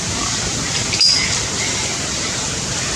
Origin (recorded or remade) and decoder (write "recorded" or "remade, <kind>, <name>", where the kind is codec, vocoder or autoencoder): recorded